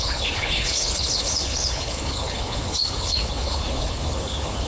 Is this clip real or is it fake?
fake